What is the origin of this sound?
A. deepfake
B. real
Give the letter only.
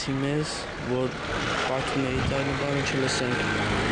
B